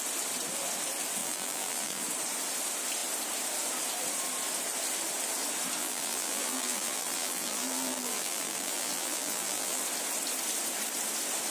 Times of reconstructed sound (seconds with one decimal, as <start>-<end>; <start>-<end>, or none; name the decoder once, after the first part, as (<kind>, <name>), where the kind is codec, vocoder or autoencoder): 1.2-2.0 (vocoder, BigVGAN v2); 5.8-9.8